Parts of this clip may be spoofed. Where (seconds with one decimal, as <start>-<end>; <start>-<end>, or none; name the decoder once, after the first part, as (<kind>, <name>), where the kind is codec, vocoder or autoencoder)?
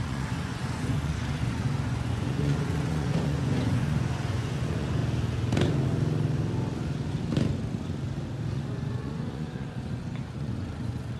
0.0-5.0 (vocoder, Vocos); 8.5-11.2